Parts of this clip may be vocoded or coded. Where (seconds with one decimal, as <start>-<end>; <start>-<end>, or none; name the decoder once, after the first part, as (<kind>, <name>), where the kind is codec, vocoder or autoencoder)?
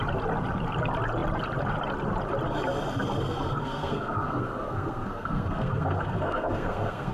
3.6-7.1 (codec, SNAC)